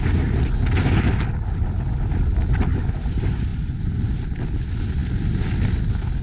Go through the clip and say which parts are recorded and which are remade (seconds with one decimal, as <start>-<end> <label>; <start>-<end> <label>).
0.0-6.2 recorded